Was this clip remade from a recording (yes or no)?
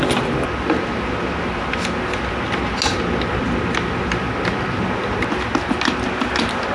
no